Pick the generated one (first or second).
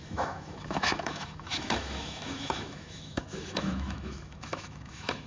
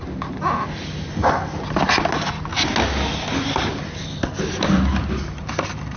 first